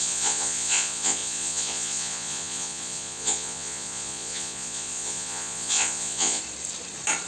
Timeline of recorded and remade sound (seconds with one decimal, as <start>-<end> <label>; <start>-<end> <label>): 0.0-6.4 remade; 6.4-7.3 recorded